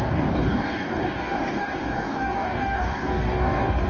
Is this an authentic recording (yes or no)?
no